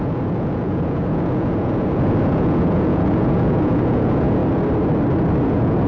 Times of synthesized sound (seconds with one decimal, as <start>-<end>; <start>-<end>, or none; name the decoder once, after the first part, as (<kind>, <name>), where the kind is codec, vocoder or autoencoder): 0.0-4.4 (vocoder, Vocos); 5.4-5.9